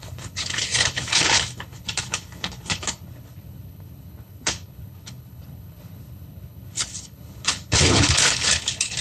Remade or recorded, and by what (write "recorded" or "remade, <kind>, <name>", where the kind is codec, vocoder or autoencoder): remade, codec, HILCodec